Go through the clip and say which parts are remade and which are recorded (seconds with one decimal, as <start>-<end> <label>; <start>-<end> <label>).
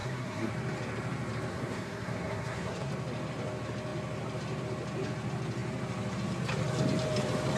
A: 0.0-0.5 remade; 0.5-1.5 recorded; 1.5-2.9 remade; 2.9-7.6 recorded